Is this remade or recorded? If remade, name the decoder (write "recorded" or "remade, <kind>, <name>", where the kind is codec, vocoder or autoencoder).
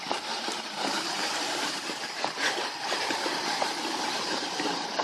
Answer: remade, vocoder, BigVGAN v2